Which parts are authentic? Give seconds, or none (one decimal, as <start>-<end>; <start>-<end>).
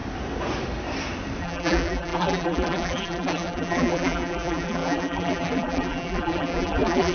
0.0-1.4